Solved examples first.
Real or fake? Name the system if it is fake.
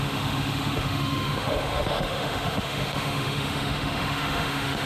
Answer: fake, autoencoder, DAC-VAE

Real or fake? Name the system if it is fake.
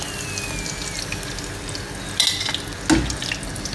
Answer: real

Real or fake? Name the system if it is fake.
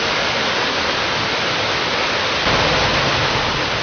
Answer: real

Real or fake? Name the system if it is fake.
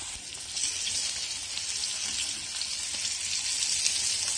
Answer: real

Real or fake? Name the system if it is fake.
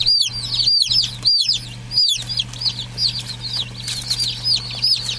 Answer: real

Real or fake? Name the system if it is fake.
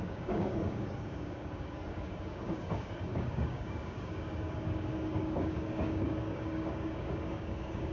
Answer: fake, codec, DAC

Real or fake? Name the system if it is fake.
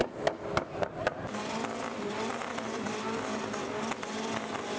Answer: real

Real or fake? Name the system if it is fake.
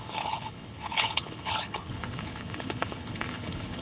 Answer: fake, codec, HILCodec